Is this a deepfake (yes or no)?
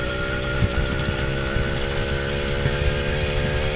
no